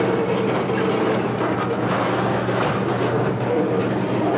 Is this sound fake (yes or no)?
no